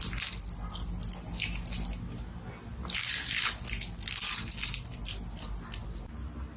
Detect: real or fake real